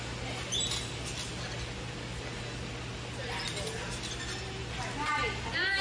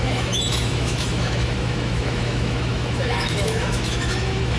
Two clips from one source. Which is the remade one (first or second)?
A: second